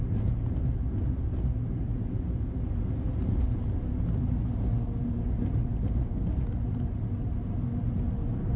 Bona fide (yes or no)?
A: yes